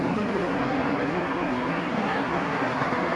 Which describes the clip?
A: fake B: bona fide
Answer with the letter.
A